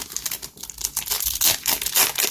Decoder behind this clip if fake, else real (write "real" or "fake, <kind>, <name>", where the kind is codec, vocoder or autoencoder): real